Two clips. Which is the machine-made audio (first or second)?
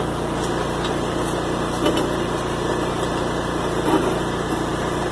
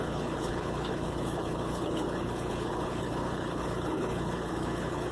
second